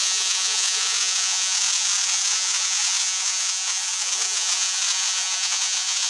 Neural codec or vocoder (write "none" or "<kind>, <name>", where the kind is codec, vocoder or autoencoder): vocoder, Vocos